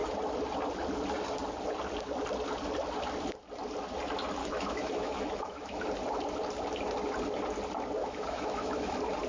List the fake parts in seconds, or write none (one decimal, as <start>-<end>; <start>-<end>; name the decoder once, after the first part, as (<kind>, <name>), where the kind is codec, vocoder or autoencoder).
4.4-5.8 (autoencoder, DAC-VAE); 8.0-8.9